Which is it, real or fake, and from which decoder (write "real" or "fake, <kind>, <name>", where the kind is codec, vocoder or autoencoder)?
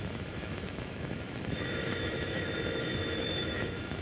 fake, autoencoder, DAC-VAE